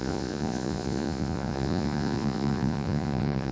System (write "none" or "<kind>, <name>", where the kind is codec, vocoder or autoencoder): vocoder, Vocos